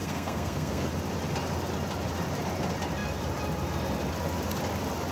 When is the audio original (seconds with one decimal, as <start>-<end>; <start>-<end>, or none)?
0.9-5.1